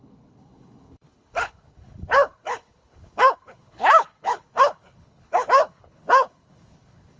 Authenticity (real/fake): fake